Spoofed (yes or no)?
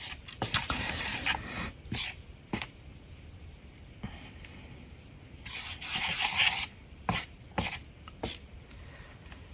no